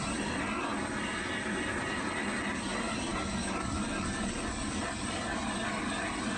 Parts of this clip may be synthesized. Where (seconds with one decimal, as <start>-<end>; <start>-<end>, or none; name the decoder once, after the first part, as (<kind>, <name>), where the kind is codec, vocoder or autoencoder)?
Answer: none